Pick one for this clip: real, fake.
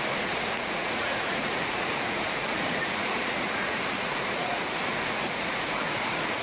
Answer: fake